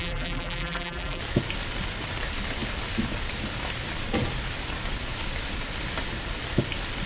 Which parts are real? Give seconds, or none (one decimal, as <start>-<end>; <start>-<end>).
1.2-7.1